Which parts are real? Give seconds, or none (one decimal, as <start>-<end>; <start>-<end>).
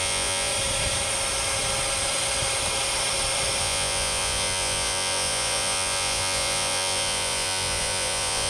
0.5-3.6